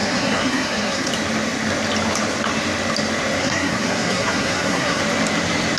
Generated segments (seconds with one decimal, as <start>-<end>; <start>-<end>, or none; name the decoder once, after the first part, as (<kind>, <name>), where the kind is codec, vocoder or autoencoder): 0.0-1.1 (codec, SNAC); 3.4-5.0